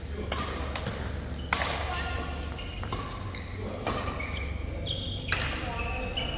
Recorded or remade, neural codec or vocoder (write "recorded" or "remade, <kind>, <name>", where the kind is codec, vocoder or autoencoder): recorded